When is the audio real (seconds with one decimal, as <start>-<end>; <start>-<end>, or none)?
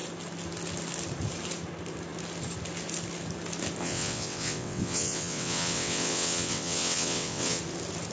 0.0-3.8; 7.6-8.1